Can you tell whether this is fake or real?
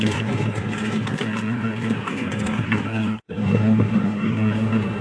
fake